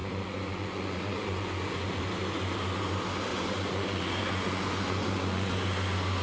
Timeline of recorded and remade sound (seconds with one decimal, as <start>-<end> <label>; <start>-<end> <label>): 0.0-2.0 remade; 2.0-3.3 recorded; 3.3-5.6 remade; 5.6-6.2 recorded